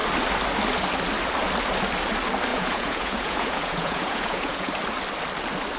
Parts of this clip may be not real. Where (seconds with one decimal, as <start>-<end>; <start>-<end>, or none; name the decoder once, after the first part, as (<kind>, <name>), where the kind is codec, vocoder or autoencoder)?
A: 2.5-4.7 (vocoder, Vocos)